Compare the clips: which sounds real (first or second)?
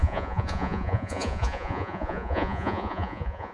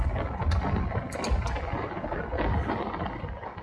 second